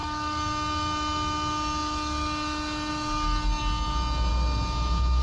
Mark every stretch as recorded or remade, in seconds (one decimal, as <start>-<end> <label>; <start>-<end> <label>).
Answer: 0.0-5.2 recorded